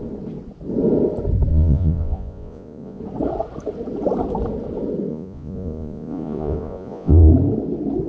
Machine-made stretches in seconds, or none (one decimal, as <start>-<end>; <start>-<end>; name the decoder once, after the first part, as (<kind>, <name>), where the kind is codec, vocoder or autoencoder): 1.5-3.0 (vocoder, Vocos); 5.1-7.3